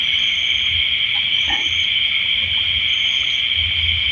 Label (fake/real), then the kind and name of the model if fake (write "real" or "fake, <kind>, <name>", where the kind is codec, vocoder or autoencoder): real